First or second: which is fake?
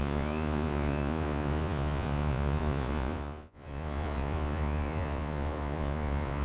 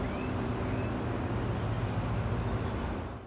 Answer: first